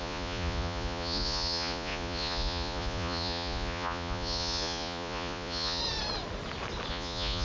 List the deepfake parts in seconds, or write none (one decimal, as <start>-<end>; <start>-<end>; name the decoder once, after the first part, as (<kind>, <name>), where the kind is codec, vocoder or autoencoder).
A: 0.0-5.8 (vocoder, Vocos); 6.9-7.4